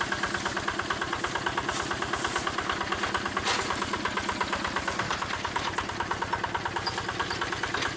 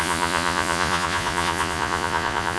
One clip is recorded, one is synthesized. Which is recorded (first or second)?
first